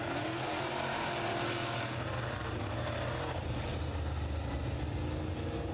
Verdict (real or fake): real